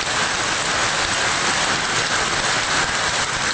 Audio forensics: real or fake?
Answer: real